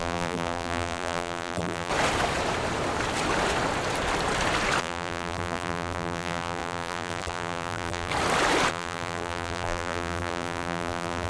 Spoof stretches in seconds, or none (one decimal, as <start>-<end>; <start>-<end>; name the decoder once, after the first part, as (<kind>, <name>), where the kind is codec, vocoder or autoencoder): 0.0-1.9 (vocoder, BigVGAN v2); 4.8-8.1; 8.7-11.3